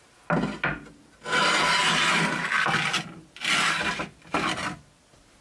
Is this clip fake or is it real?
real